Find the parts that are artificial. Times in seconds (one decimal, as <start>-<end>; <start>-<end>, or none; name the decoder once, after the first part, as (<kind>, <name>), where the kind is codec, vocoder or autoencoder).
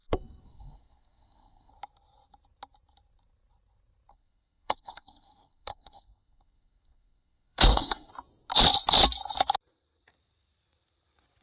0.0-1.7 (codec, SNAC); 4.1-8.1